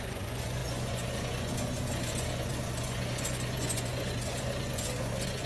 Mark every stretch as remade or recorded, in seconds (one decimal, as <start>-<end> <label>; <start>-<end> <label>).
0.0-5.5 remade